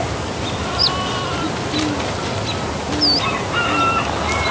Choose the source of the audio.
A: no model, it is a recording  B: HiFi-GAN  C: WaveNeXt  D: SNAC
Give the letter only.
A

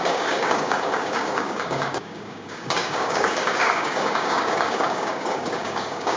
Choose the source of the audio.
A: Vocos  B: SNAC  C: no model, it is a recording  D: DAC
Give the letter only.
D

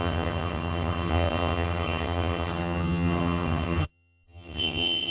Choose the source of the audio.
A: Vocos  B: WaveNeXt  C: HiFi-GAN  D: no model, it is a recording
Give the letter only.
C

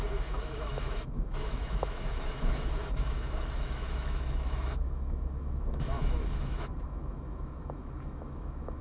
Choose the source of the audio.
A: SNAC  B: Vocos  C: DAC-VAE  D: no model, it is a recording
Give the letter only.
C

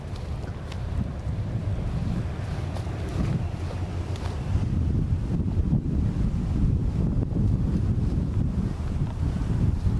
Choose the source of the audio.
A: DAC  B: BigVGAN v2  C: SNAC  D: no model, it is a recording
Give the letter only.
B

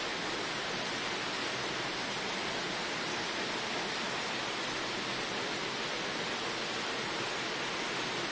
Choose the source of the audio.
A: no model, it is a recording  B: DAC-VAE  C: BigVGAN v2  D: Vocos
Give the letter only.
A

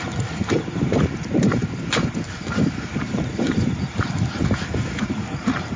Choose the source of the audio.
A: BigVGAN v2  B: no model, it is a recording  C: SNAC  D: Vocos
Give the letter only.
A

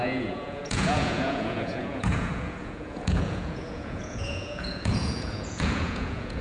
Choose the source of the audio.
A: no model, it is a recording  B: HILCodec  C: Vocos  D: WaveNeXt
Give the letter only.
C